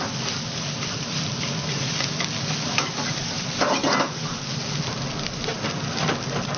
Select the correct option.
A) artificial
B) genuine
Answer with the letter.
B